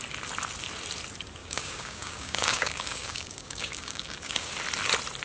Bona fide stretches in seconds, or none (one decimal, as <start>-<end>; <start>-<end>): 0.0-1.4; 4.5-5.2